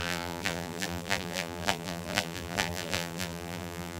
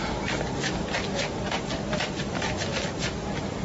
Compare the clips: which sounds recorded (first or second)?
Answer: second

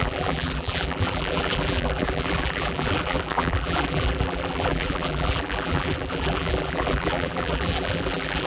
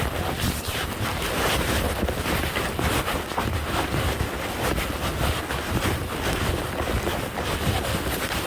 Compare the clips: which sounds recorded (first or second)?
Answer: second